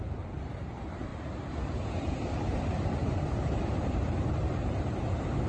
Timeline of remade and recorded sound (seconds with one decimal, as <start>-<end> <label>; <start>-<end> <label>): 0.0-5.5 remade